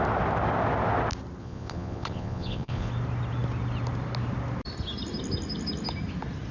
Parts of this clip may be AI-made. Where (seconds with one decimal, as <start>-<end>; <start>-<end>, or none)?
1.4-2.9